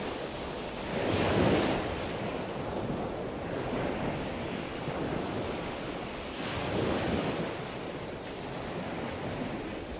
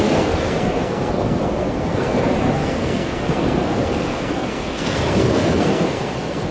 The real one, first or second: first